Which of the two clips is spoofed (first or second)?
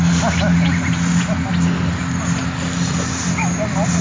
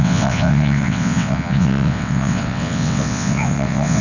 second